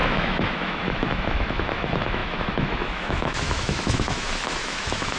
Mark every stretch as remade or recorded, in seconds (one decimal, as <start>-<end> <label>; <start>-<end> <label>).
0.0-5.2 remade